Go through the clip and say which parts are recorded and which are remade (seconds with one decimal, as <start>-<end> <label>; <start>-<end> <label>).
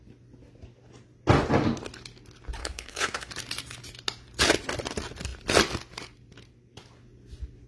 0.0-2.6 recorded; 2.6-3.3 remade; 3.3-7.7 recorded